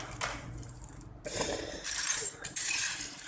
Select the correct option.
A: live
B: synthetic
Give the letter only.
B